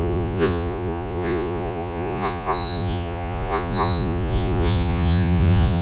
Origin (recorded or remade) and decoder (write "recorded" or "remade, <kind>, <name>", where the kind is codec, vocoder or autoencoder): remade, vocoder, Vocos